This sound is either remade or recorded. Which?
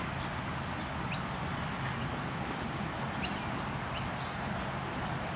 recorded